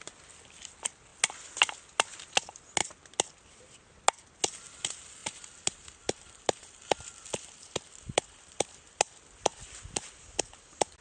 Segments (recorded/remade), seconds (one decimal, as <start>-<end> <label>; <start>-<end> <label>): 0.0-5.2 recorded; 5.2-8.8 remade; 8.8-9.5 recorded; 9.5-10.4 remade; 10.4-11.0 recorded